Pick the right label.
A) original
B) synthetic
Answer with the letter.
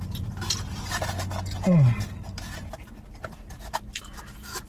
A